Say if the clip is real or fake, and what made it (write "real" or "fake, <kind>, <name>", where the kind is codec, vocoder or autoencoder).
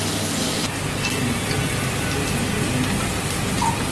real